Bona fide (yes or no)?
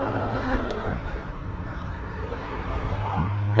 no